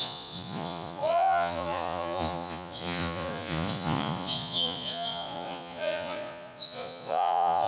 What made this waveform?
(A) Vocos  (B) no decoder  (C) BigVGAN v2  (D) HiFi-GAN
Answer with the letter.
A